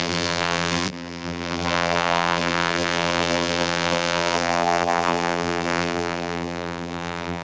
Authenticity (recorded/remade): remade